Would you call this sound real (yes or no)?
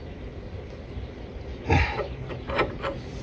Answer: yes